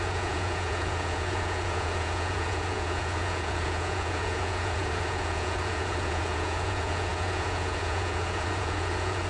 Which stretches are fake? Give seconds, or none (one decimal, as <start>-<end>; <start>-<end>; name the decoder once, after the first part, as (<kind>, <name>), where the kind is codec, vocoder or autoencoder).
0.0-9.3 (vocoder, Vocos)